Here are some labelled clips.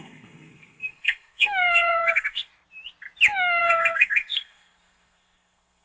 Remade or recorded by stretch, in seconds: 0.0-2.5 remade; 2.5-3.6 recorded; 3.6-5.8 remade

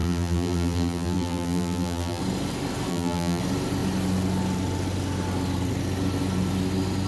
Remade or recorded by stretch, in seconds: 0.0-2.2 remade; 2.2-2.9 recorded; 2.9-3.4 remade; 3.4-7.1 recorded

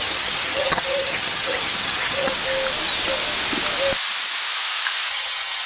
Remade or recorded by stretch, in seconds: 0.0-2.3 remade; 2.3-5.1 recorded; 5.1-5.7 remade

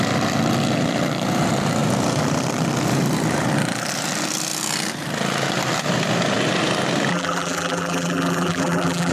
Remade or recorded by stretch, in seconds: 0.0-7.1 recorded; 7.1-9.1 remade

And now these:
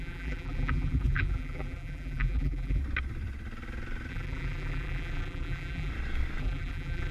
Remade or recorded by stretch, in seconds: 0.0-2.8 remade; 2.8-4.1 recorded; 4.1-5.9 remade; 5.9-6.4 recorded; 6.4-7.1 remade

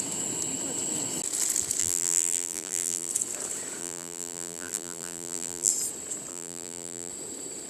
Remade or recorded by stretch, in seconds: 0.0-1.8 recorded; 1.8-3.1 remade; 3.1-3.8 recorded; 3.8-5.7 remade; 5.7-6.3 recorded; 6.3-7.1 remade; 7.1-7.7 recorded